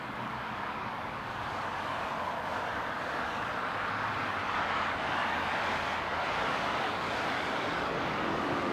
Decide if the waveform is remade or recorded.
remade